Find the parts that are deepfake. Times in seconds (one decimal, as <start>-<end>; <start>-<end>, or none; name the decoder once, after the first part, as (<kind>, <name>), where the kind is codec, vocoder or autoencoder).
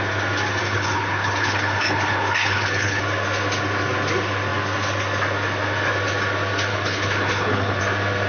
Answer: 0.6-3.0 (codec, HILCodec); 6.7-7.8